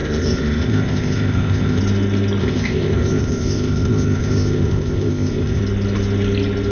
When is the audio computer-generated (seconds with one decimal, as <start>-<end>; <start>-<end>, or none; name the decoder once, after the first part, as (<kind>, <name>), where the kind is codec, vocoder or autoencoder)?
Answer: 0.0-1.8 (codec, ZipCodec); 2.4-5.6